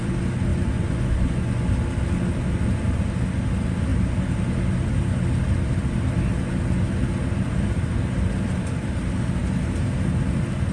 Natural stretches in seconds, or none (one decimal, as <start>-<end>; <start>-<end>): 0.0-0.5; 1.7-10.7